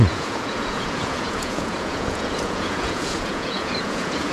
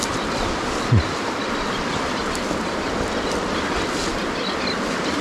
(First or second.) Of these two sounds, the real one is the second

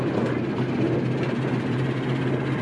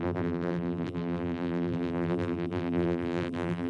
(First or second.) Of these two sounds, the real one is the first